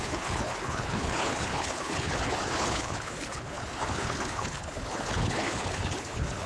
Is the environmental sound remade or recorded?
remade